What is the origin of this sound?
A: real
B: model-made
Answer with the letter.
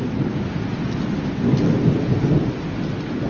A